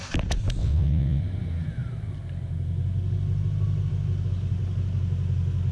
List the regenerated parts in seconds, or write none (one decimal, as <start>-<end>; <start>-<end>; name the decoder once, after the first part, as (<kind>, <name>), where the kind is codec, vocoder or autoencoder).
0.6-1.2 (vocoder, WaveNeXt)